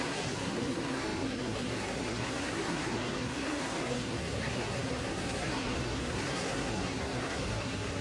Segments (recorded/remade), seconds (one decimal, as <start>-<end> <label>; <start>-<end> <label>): 0.0-8.0 remade